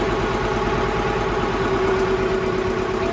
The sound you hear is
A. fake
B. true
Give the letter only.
B